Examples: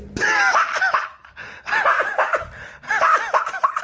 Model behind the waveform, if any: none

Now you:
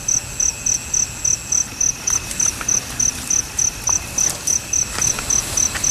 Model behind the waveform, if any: none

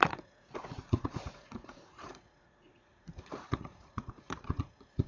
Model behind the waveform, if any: vocoder, Vocos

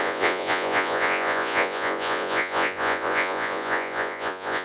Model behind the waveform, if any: vocoder, Vocos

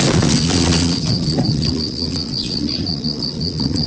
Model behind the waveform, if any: vocoder, Vocos